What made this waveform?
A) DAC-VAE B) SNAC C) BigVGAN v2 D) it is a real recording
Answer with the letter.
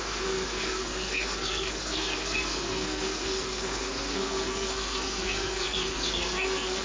B